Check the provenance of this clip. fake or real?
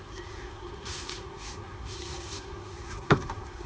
fake